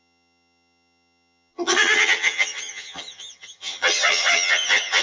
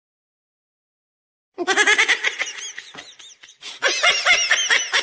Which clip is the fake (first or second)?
first